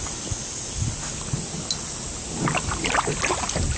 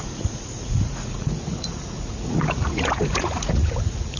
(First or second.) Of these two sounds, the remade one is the second